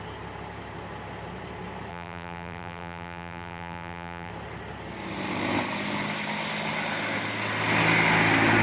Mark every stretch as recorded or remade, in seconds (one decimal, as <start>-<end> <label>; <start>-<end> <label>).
0.0-1.9 recorded; 1.9-4.3 remade; 4.3-8.6 recorded